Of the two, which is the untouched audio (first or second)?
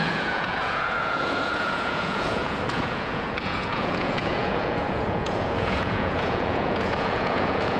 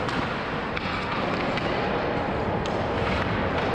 second